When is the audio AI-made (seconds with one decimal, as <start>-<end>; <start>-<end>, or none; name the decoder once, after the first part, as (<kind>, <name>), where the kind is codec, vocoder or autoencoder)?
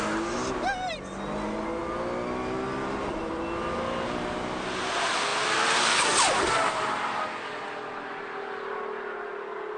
none